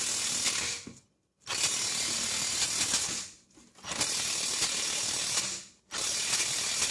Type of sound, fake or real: real